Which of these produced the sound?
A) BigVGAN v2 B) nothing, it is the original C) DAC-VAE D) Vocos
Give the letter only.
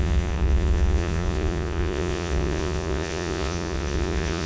D